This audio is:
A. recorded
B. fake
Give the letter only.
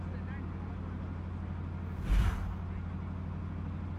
A